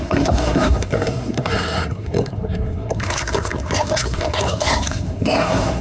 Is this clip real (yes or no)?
no